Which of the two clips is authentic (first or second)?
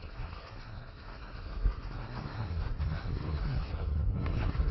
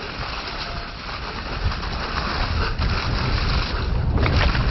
second